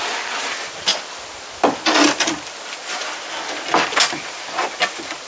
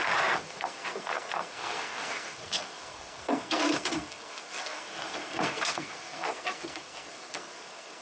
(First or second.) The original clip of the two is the first